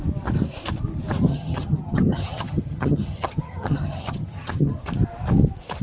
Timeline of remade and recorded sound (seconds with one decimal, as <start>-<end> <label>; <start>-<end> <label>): 0.0-1.3 recorded; 1.3-4.8 remade; 4.8-5.8 recorded